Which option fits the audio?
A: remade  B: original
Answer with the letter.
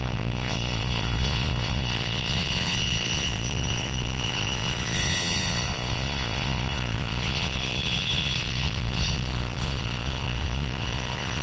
A